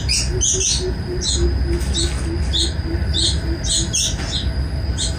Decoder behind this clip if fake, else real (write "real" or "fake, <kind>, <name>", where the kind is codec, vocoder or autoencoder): real